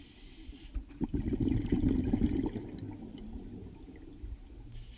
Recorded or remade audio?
recorded